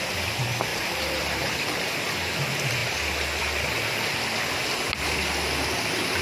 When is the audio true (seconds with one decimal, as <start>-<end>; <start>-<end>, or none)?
0.0-0.7; 2.0-6.2